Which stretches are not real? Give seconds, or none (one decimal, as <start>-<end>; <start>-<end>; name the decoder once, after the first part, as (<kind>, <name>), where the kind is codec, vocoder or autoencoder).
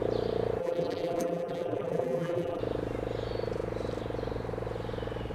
0.6-2.6 (vocoder, BigVGAN v2)